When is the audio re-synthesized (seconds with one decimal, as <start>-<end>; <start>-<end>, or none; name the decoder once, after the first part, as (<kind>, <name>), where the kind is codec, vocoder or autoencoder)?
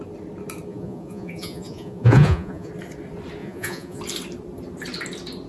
0.7-2.7 (vocoder, Vocos); 3.4-4.0